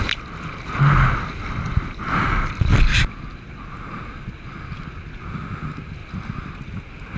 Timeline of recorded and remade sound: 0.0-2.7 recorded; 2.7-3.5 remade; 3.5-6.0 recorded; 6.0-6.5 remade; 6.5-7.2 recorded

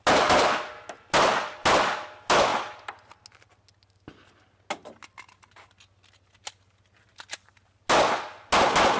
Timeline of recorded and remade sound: 0.0-9.0 recorded

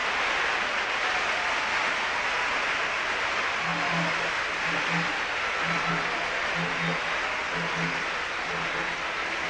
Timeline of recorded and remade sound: 0.0-9.5 recorded

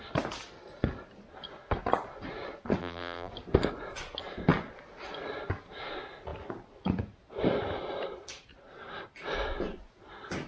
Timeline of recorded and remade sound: 0.0-2.8 recorded; 2.8-3.3 remade; 3.3-10.5 recorded